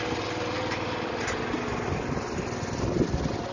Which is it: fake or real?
real